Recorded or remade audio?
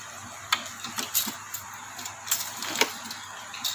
remade